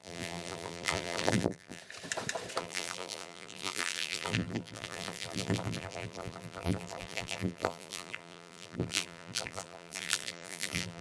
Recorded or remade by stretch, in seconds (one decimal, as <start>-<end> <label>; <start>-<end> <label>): 0.0-1.8 remade; 1.8-2.6 recorded; 2.6-11.0 remade